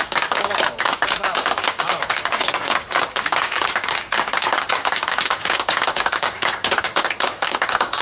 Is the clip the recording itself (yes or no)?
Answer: no